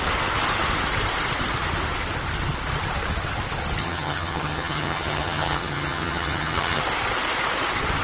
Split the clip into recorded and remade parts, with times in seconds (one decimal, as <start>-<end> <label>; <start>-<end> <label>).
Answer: 0.0-3.8 recorded; 3.8-6.8 remade; 6.8-8.0 recorded